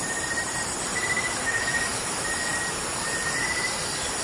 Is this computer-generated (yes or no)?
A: yes